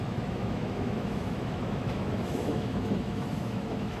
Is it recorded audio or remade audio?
remade